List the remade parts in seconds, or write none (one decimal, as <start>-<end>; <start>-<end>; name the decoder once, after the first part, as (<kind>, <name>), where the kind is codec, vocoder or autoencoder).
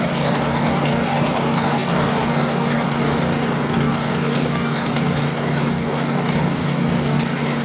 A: 0.0-7.6 (codec, DAC)